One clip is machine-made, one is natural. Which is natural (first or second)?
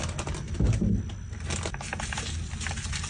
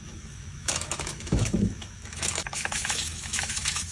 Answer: first